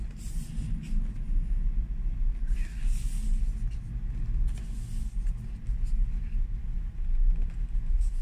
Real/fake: real